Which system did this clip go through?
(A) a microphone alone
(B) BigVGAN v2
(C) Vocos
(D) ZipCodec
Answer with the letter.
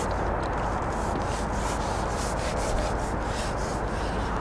A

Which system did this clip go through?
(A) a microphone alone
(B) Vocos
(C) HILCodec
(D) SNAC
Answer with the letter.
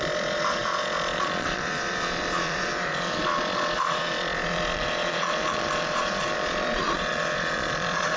B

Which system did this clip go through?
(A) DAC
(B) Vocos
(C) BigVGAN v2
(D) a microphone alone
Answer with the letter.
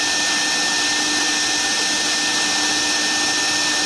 D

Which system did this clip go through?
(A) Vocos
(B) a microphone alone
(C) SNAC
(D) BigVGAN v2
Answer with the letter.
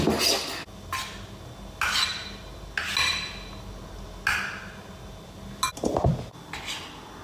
B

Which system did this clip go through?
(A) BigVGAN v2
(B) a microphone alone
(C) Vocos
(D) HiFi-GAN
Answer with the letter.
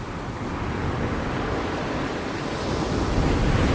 B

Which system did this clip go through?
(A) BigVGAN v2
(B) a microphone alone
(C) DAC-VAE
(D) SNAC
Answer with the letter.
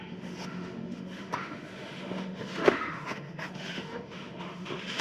C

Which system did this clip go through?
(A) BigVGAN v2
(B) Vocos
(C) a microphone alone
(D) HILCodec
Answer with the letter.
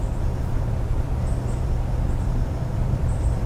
A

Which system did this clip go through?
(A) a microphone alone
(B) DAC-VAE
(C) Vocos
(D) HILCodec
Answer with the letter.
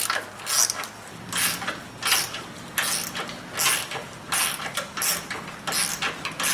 A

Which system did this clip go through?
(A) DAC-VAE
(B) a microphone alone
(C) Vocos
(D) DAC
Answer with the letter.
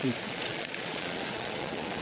C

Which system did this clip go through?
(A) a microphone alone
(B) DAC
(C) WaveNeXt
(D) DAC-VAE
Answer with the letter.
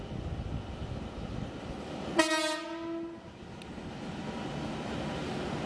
A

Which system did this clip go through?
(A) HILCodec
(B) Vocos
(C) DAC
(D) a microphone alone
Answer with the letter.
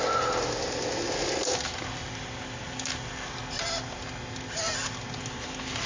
D